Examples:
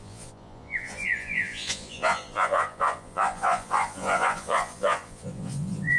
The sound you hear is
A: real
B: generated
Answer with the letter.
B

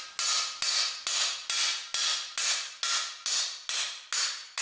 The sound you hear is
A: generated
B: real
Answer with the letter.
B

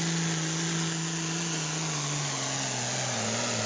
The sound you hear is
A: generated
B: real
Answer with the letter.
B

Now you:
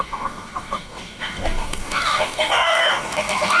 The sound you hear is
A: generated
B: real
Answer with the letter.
A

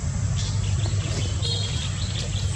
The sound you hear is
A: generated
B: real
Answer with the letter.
B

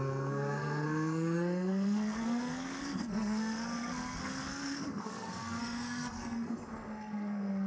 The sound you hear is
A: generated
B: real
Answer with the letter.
A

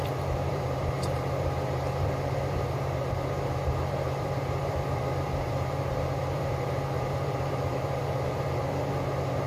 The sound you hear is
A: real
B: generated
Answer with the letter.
B